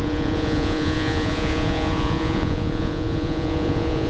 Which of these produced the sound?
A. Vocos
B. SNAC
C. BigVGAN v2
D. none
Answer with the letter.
A